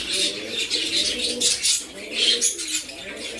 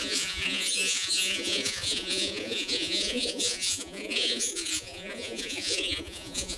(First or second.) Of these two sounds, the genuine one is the first